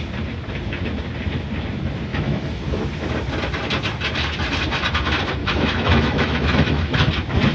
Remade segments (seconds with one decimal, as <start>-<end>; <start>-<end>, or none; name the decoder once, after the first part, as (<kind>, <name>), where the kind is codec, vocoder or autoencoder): 2.1-2.8 (autoencoder, DAC-VAE); 5.4-7.1